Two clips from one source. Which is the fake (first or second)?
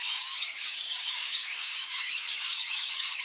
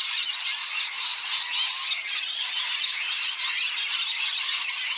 first